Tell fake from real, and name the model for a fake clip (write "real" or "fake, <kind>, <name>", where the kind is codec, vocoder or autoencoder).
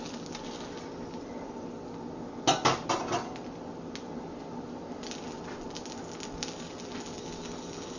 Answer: real